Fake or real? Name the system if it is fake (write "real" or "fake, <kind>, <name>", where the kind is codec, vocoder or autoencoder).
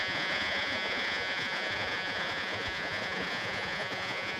fake, vocoder, Vocos